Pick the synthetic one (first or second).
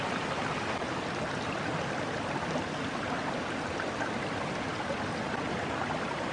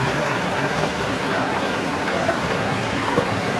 second